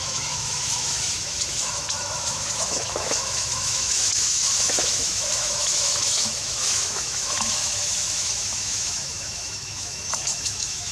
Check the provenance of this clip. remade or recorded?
remade